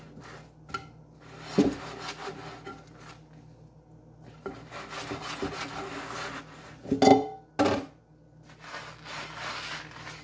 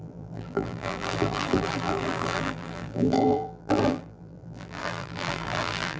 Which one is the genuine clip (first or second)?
first